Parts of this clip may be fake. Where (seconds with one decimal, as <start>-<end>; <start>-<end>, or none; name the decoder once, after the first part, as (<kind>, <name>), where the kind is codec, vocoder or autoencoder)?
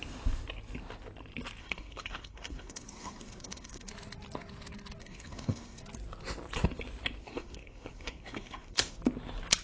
1.6-3.9 (codec, SNAC); 5.0-5.8; 7.2-9.0